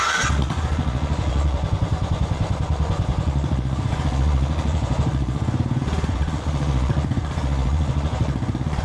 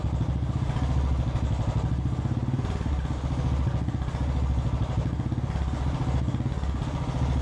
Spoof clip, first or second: first